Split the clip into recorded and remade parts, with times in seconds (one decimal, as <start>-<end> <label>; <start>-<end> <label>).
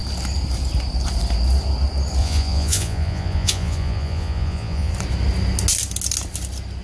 0.0-2.2 recorded; 2.2-4.9 remade; 4.9-6.8 recorded